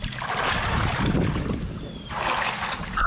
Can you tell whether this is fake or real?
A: real